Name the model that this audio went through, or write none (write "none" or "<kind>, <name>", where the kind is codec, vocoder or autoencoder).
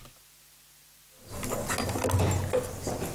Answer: none